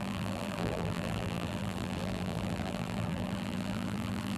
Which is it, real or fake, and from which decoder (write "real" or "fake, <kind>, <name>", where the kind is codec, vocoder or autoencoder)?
fake, vocoder, BigVGAN v2